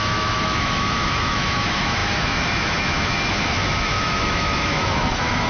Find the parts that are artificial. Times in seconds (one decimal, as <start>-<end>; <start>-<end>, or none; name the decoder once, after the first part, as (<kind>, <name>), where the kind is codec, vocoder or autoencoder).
0.0-5.5 (autoencoder, DAC-VAE)